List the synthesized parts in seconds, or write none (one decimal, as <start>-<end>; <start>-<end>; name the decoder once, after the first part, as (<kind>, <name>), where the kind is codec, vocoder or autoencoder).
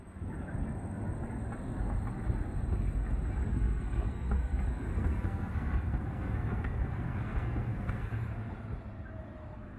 3.5-8.1 (codec, SNAC)